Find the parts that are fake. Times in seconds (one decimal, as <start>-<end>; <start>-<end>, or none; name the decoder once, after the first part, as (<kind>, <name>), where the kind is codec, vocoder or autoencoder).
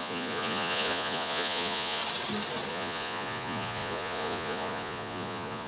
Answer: 0.0-2.0 (vocoder, Vocos); 2.7-5.7